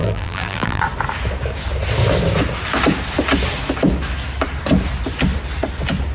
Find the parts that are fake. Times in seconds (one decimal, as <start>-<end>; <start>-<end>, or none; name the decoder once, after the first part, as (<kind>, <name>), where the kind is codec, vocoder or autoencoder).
0.0-0.8 (vocoder, BigVGAN v2)